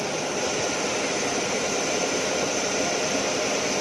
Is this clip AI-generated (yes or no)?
yes